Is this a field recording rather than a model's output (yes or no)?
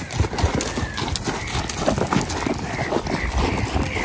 yes